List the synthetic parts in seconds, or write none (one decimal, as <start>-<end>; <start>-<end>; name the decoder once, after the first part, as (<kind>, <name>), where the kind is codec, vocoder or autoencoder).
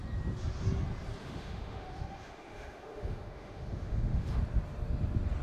1.2-4.4 (autoencoder, DAC-VAE)